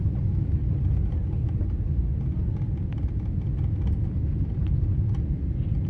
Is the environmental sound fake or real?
real